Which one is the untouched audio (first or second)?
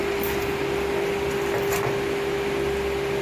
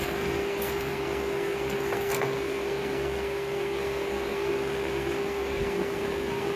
first